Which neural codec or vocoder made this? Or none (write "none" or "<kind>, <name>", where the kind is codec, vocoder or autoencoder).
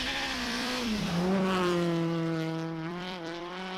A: vocoder, BigVGAN v2